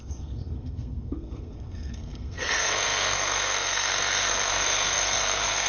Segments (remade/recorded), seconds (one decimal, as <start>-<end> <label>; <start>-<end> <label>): 0.0-5.7 remade